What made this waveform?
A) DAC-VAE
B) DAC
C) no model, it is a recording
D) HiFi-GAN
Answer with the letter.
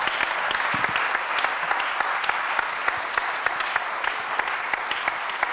C